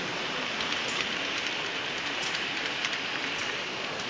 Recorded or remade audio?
remade